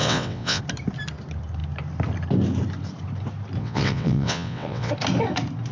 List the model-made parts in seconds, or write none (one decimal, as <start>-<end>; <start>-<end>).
0.0-0.6; 3.6-4.9